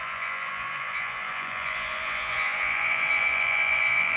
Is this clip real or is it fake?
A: fake